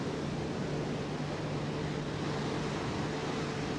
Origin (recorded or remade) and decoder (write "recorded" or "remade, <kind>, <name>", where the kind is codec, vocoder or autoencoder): recorded